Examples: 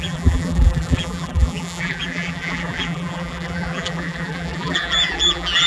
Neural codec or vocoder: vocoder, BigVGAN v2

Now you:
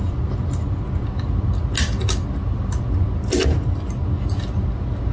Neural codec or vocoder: none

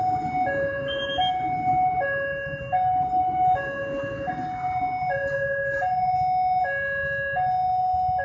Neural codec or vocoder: none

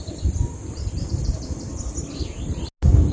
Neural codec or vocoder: none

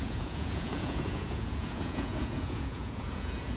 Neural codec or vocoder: vocoder, Vocos